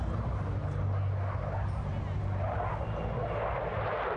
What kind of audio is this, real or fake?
real